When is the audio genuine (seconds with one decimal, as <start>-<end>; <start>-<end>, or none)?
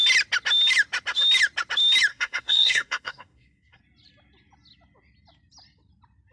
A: 0.0-2.1; 3.8-6.3